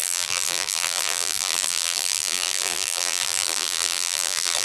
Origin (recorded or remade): remade